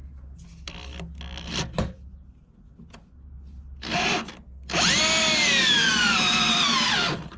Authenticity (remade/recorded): recorded